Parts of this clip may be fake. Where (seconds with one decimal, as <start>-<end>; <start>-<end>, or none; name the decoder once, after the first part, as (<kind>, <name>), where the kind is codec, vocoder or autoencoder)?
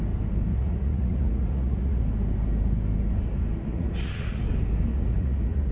0.5-2.0 (vocoder, Vocos); 3.7-4.4; 4.9-5.7